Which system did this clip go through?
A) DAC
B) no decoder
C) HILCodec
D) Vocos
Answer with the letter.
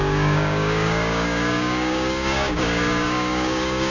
A